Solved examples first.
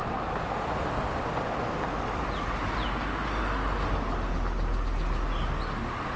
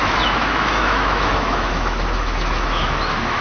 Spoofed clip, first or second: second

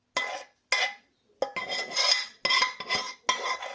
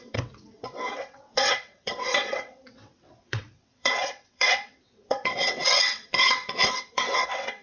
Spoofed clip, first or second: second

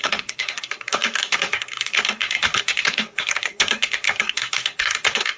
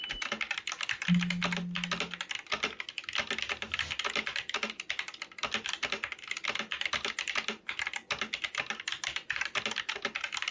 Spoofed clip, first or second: first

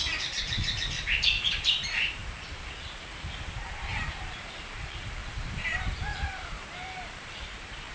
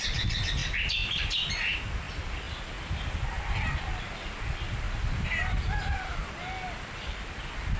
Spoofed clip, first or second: first